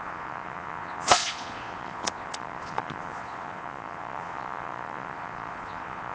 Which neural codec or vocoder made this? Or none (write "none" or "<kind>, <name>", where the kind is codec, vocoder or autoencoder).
vocoder, Vocos